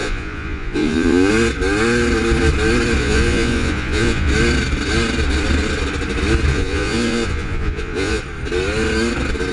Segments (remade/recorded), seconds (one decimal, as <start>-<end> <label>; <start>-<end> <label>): 0.0-1.3 remade; 1.3-3.0 recorded; 3.0-4.3 remade; 4.3-6.5 recorded; 6.5-8.2 remade; 8.2-9.5 recorded